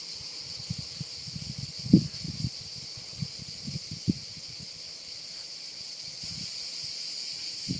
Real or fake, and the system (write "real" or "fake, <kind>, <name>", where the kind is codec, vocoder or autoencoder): real